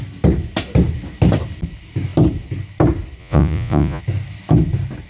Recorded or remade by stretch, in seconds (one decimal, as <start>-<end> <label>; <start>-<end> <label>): 0.0-3.2 recorded; 3.2-4.0 remade; 4.0-5.1 recorded